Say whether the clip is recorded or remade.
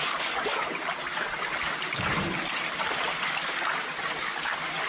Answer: recorded